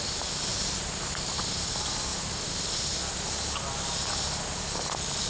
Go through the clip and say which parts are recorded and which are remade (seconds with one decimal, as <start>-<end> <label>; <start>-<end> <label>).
0.0-0.5 recorded; 0.5-1.1 remade; 1.1-2.1 recorded; 2.1-2.6 remade; 2.6-5.3 recorded